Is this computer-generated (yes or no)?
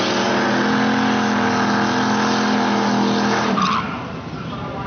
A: no